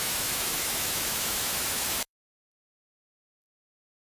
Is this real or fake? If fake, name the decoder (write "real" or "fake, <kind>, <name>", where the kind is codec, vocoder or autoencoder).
fake, autoencoder, DAC-VAE